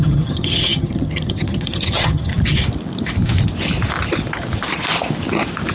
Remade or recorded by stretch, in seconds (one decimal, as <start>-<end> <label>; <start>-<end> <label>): 0.0-2.3 remade; 2.3-5.7 recorded